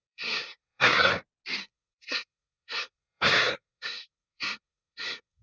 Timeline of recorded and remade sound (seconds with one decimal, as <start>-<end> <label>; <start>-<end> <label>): 0.0-1.1 remade; 1.1-1.6 recorded; 1.6-5.4 remade